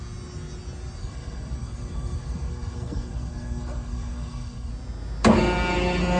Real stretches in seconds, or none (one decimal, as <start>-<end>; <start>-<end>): 0.0-1.0; 4.7-6.2